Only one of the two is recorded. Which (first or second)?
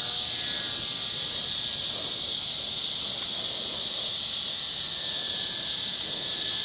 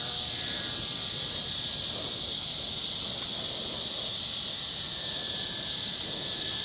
first